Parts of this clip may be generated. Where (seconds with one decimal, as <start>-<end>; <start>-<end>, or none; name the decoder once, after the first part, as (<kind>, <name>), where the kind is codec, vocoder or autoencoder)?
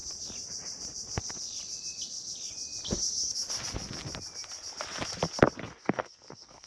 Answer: 5.6-6.7 (codec, SNAC)